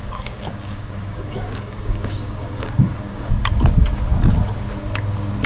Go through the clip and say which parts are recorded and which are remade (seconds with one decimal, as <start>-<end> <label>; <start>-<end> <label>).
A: 0.0-3.3 remade; 3.3-5.5 recorded